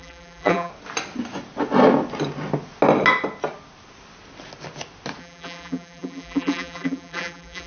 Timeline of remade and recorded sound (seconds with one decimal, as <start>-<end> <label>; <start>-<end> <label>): 0.0-0.7 remade; 0.7-5.2 recorded; 5.2-7.7 remade